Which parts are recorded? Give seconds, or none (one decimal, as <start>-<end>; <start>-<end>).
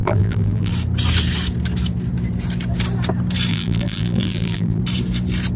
0.7-3.5; 4.8-5.6